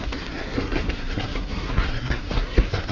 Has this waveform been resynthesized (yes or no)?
yes